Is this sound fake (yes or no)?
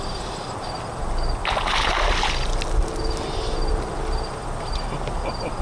no